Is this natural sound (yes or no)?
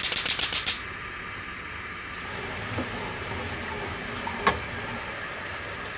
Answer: yes